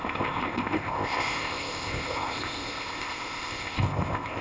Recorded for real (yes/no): no